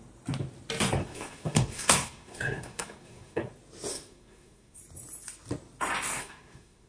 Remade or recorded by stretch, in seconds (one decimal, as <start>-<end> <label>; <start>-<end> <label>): 0.0-1.0 recorded; 1.0-3.5 remade; 3.5-3.9 recorded; 3.9-4.8 remade; 4.8-6.2 recorded; 6.2-6.9 remade